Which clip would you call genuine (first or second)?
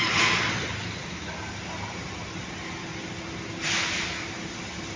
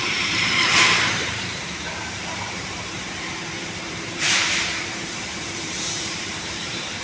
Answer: first